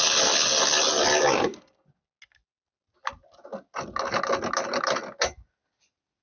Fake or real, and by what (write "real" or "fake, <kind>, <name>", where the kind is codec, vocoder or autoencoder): real